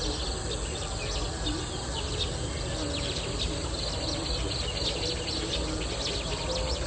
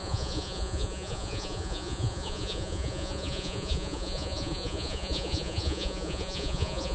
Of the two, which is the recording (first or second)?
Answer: first